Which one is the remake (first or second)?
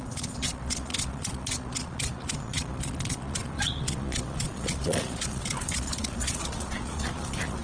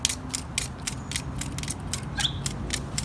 first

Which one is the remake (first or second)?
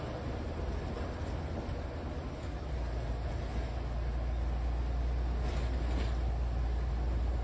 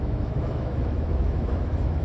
second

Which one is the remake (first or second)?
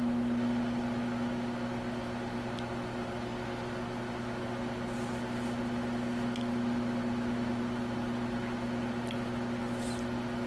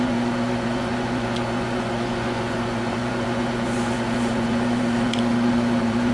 second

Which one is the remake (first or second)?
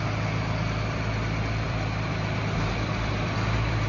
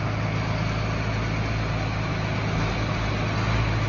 first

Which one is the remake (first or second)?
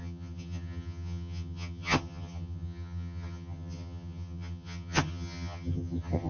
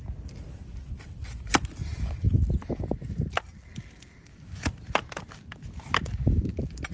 first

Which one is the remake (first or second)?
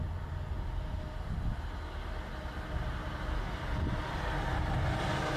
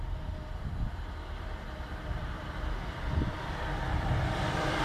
second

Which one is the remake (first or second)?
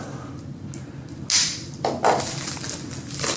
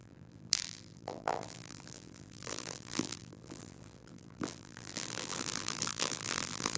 second